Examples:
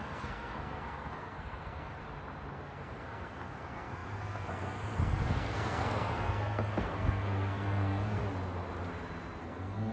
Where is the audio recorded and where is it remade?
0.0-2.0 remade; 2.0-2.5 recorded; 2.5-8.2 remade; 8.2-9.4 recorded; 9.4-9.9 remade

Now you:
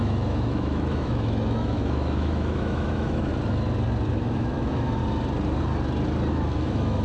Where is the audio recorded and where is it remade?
0.0-3.3 remade; 3.3-4.1 recorded; 4.1-5.0 remade; 5.0-6.3 recorded; 6.3-7.0 remade

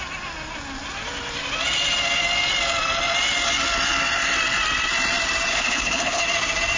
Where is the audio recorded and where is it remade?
0.0-5.5 recorded; 5.5-6.2 remade; 6.2-6.8 recorded

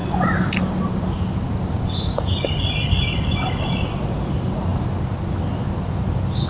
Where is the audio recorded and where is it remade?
0.0-6.5 recorded

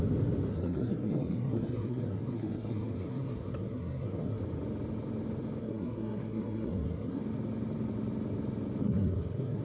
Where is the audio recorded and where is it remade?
0.0-0.5 recorded; 0.5-4.4 remade; 4.4-5.6 recorded; 5.6-7.2 remade; 7.2-8.8 recorded; 8.8-9.6 remade

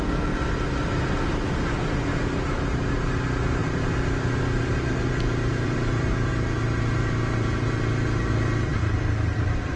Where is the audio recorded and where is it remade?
0.0-3.6 recorded; 3.6-6.3 remade; 6.3-8.7 recorded; 8.7-9.8 remade

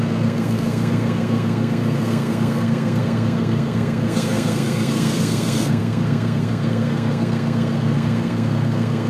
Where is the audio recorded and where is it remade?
0.0-9.1 remade

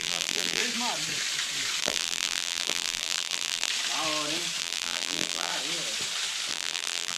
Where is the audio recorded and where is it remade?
0.0-0.6 remade; 0.6-1.8 recorded; 1.8-3.7 remade; 3.7-4.6 recorded; 4.6-5.5 remade; 5.5-6.5 recorded; 6.5-7.2 remade